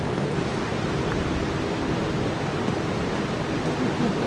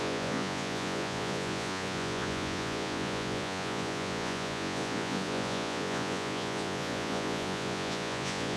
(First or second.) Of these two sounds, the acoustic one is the first